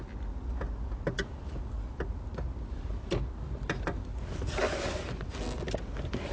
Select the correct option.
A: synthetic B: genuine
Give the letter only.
B